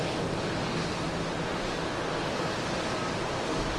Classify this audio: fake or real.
real